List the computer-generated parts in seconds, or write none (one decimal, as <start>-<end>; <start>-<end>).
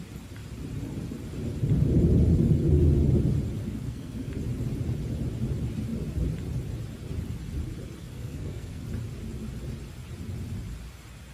3.6-4.3; 8.0-8.8